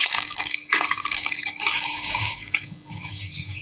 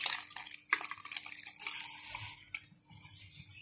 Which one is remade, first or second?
first